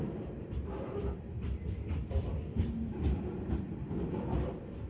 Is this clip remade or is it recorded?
remade